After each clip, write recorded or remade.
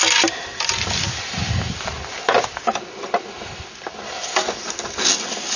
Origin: recorded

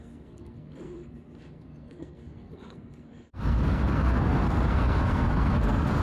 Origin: remade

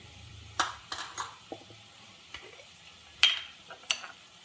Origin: remade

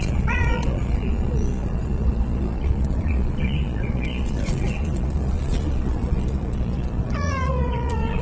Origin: remade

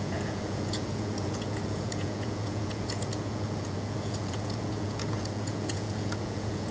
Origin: remade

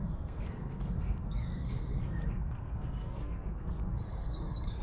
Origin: remade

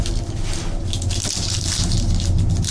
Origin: recorded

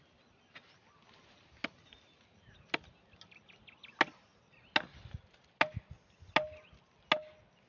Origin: recorded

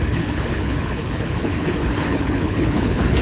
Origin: remade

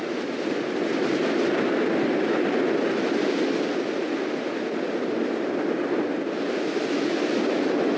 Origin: recorded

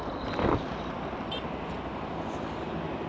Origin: recorded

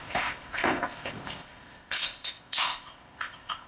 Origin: remade